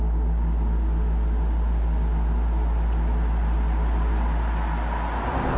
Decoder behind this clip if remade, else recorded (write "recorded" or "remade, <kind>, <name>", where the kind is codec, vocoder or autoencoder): recorded